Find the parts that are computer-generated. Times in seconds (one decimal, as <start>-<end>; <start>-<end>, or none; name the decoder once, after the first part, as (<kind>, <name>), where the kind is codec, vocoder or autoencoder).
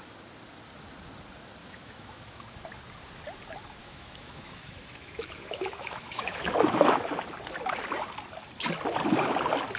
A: 1.6-2.6 (autoencoder, DAC-VAE); 3.8-7.0